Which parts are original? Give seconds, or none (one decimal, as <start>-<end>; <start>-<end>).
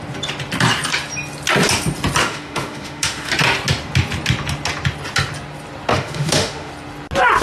0.0-2.2; 3.3-5.9; 6.7-7.4